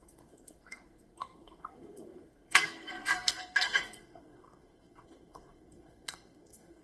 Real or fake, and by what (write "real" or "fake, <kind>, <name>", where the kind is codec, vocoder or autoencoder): fake, codec, SNAC